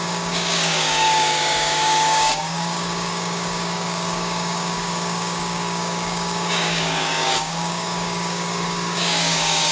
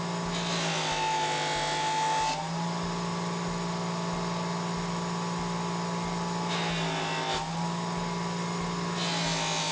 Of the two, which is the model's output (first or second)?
first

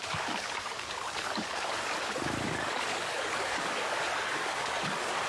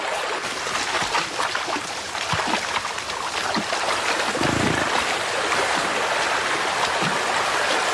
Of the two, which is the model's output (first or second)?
first